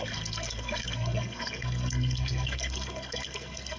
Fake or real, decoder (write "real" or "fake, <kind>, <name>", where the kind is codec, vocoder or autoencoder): fake, codec, SNAC